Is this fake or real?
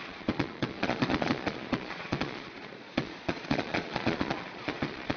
fake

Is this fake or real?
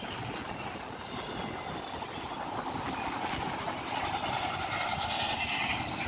real